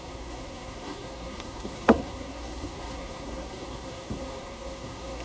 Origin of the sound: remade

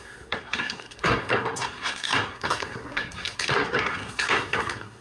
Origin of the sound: remade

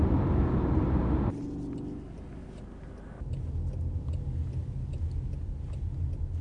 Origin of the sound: recorded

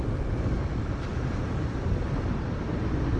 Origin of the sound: recorded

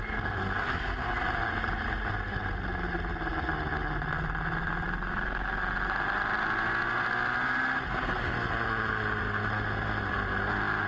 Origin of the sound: recorded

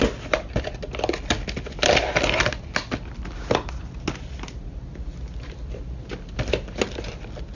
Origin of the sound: recorded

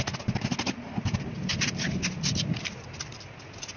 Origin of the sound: recorded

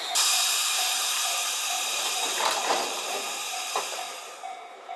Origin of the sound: remade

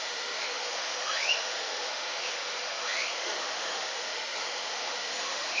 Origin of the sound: remade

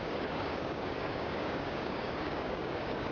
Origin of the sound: remade